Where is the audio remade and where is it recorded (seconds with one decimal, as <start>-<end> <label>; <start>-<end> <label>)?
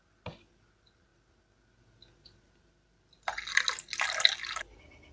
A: 0.0-5.1 recorded